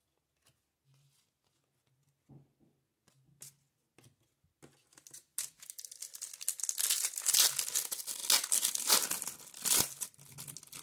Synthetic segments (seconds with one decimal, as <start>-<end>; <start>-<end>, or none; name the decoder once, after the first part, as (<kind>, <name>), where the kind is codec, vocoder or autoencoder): none